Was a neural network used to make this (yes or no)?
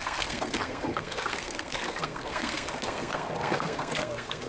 yes